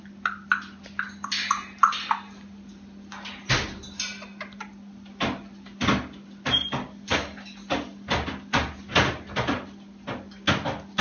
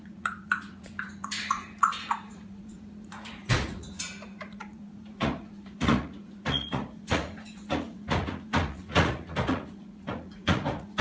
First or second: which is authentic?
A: first